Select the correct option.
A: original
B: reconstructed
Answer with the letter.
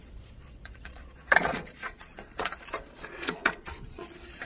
B